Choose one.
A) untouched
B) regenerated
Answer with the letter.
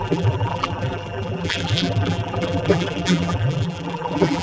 B